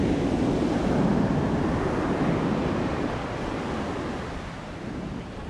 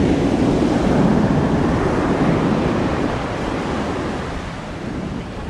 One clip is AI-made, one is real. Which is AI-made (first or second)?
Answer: second